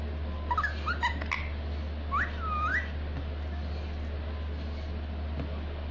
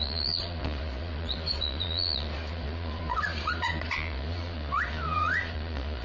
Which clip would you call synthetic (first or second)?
second